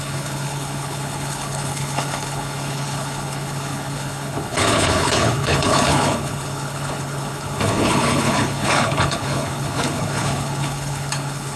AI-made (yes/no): yes